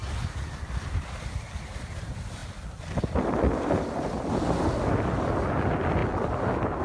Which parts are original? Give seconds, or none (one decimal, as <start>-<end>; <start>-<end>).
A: 0.0-6.8

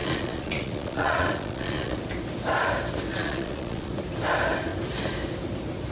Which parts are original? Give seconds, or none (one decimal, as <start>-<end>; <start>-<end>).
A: 2.0-3.1; 3.9-5.9

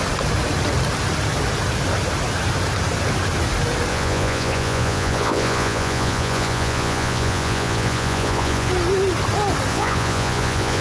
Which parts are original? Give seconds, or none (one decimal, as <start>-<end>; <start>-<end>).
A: 0.0-3.9; 8.7-9.7